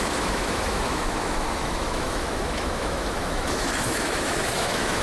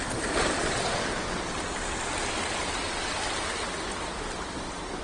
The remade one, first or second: first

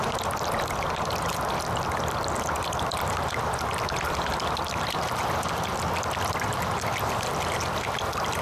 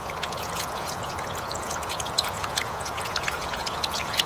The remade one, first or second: second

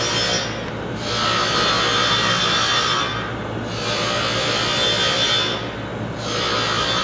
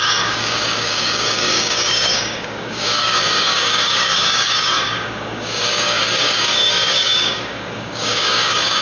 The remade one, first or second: second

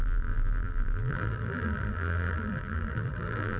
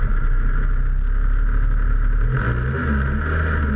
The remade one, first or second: first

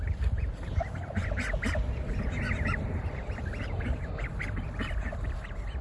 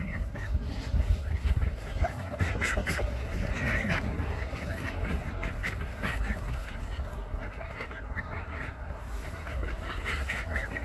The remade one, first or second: second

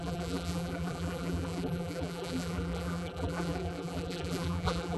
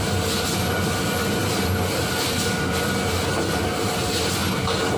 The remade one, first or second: first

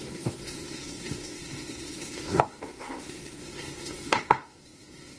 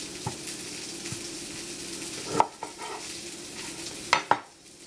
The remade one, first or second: first